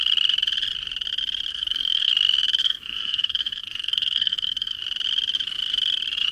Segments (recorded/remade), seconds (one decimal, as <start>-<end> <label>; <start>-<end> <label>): 0.0-1.5 recorded; 1.5-2.1 remade; 2.1-2.6 recorded; 2.6-4.8 remade; 4.8-6.3 recorded